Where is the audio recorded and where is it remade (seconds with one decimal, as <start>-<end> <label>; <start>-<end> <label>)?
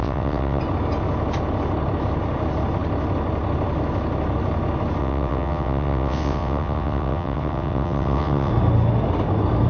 0.0-0.6 remade; 0.6-5.0 recorded; 5.0-8.5 remade; 8.5-9.7 recorded